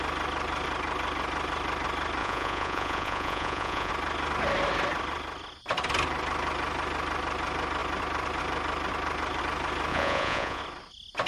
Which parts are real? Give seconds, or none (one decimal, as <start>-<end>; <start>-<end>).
0.0-2.2; 3.9-9.9; 10.6-11.3